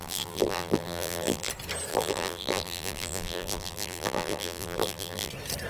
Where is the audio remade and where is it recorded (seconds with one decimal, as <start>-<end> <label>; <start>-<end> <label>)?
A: 0.0-1.5 remade; 1.5-1.9 recorded; 1.9-5.3 remade; 5.3-5.7 recorded

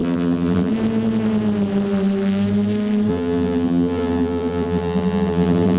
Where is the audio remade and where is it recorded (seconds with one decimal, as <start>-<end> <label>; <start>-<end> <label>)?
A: 0.0-0.7 remade; 0.7-3.1 recorded; 3.1-5.8 remade